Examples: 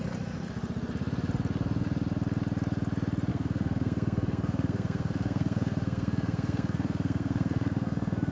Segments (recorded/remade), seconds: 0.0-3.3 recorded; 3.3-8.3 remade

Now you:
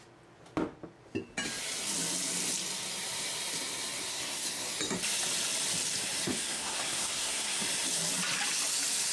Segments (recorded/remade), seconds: 0.0-4.1 recorded; 4.1-4.7 remade; 4.7-6.2 recorded; 6.2-7.6 remade; 7.6-9.1 recorded

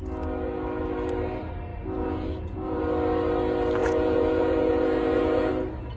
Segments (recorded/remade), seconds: 0.0-1.7 recorded; 1.7-2.8 remade; 2.8-3.8 recorded; 3.8-5.5 remade; 5.5-6.0 recorded

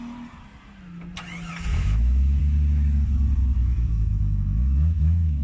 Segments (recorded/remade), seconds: 0.0-1.7 recorded; 1.7-2.4 remade; 2.4-3.6 recorded; 3.6-5.4 remade

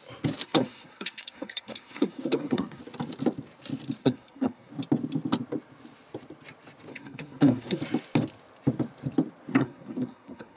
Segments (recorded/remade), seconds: 0.0-0.4 recorded; 0.4-2.8 remade; 2.8-4.0 recorded; 4.0-4.7 remade; 4.7-6.9 recorded; 6.9-7.8 remade; 7.8-9.5 recorded; 9.5-10.6 remade

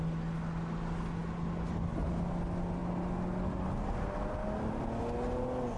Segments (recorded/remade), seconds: 0.0-5.8 recorded

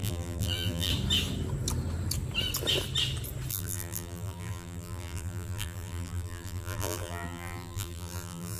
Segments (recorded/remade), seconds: 0.0-0.9 remade; 0.9-3.5 recorded; 3.5-8.6 remade